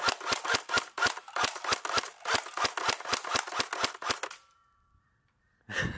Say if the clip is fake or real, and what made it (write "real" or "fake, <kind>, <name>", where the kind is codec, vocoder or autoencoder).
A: real